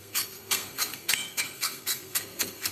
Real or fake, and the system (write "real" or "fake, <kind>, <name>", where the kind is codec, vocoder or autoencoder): fake, codec, SNAC